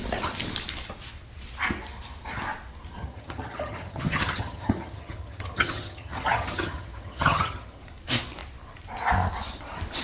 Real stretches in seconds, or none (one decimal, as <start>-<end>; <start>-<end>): 0.0-3.0; 7.8-10.0